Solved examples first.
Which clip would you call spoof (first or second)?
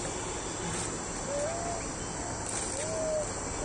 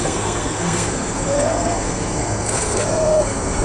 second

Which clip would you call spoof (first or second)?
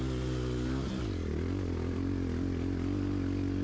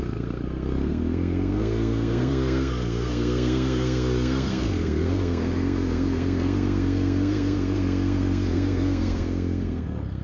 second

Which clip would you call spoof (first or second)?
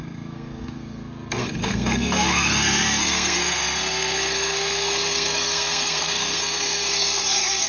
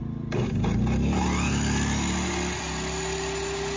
first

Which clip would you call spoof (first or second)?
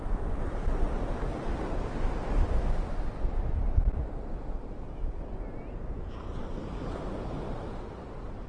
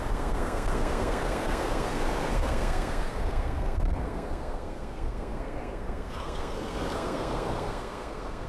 second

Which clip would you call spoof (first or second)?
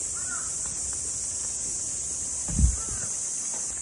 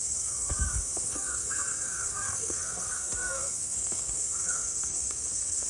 second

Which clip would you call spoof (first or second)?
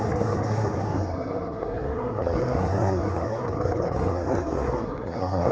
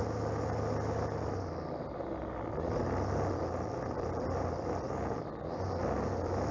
first